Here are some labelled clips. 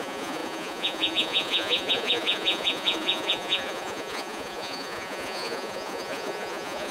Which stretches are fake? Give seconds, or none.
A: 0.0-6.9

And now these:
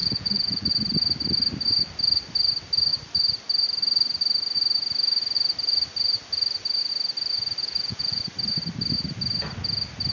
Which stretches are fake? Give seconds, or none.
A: 0.0-0.7; 7.6-8.2

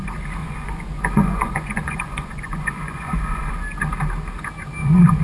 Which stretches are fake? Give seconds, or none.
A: 0.4-3.5

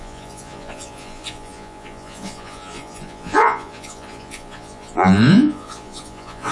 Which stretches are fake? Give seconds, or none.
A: 0.0-6.5